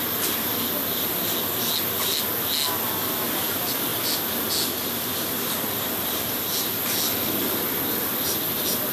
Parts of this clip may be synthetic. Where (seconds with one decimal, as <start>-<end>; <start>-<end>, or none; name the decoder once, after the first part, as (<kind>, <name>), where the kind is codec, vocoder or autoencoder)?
none